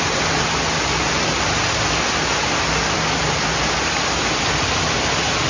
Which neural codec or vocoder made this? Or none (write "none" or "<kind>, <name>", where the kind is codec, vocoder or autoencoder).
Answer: none